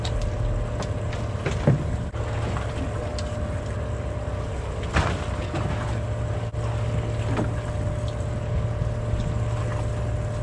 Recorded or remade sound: recorded